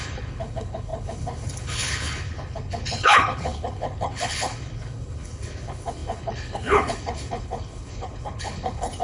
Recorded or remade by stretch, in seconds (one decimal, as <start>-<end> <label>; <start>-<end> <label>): 0.0-9.0 remade

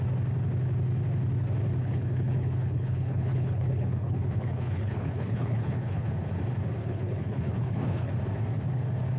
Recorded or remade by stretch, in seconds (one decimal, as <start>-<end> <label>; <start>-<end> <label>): 0.0-1.8 recorded; 1.8-6.1 remade; 6.1-6.8 recorded; 6.8-8.1 remade; 8.1-9.2 recorded

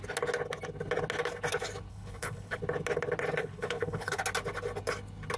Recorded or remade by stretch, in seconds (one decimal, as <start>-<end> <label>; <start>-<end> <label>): 0.0-1.9 recorded; 1.9-2.6 remade; 2.6-3.4 recorded; 3.4-4.2 remade; 4.2-5.4 recorded